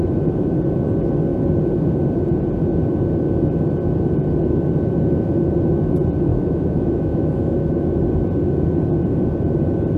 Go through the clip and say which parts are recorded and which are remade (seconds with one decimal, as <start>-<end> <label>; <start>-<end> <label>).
0.0-6.3 recorded; 6.3-8.0 remade; 8.0-10.0 recorded